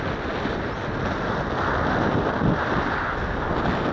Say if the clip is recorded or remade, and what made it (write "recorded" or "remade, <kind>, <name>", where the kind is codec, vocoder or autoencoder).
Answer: recorded